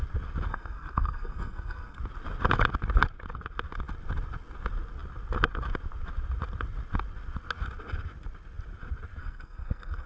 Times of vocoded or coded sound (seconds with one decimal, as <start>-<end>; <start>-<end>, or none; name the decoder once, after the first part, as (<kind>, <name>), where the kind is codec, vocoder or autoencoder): 0.5-2.0 (codec, SNAC); 9.2-10.1

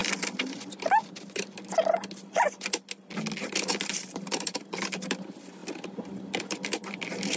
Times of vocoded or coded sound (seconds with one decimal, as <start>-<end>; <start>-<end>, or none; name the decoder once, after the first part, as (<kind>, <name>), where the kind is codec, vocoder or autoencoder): 3.4-5.6 (vocoder, BigVGAN v2); 6.4-7.4